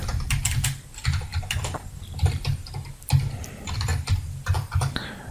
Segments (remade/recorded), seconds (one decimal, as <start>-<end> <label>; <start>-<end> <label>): 0.0-5.3 recorded